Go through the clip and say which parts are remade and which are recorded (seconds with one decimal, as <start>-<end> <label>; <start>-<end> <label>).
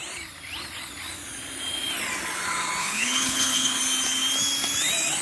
0.0-2.8 recorded; 2.8-3.8 remade; 3.8-5.2 recorded